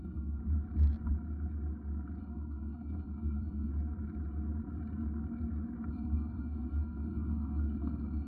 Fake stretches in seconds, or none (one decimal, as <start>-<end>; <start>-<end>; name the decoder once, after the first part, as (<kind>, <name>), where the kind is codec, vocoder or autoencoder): 0.0-0.4 (codec, SNAC); 2.2-3.7; 5.9-8.3